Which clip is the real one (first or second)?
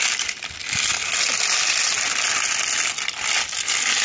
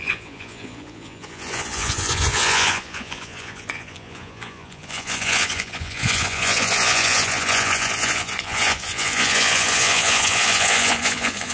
first